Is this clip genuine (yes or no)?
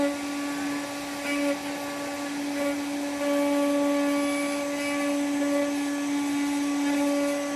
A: yes